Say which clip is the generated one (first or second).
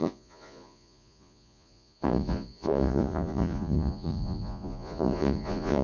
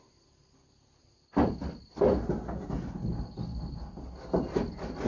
first